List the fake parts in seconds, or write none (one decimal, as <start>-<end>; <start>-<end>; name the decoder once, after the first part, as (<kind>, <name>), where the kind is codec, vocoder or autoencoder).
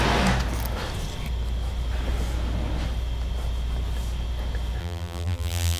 4.8-5.8 (vocoder, BigVGAN v2)